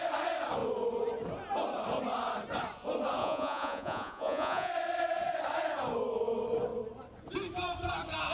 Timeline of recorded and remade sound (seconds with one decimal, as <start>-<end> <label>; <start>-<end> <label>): 0.0-3.2 recorded; 3.2-4.7 remade; 4.7-8.3 recorded